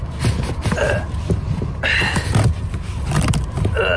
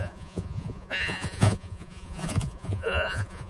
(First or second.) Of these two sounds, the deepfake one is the second